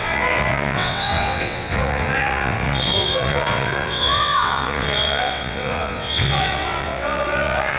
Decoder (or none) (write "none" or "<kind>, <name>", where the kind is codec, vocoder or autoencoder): vocoder, WaveNeXt